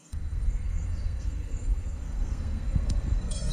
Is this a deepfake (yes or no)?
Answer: yes